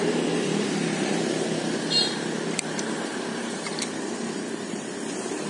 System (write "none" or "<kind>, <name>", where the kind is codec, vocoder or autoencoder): vocoder, BigVGAN v2